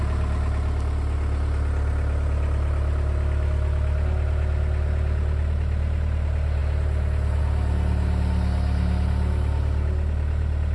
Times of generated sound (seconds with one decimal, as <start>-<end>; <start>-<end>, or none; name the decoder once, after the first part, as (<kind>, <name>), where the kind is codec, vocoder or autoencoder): none